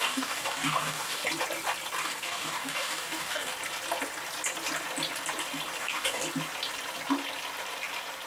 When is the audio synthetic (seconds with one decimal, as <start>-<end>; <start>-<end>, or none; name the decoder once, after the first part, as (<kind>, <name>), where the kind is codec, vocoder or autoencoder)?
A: 0.0-1.2 (codec, DAC); 2.0-3.5; 5.8-6.2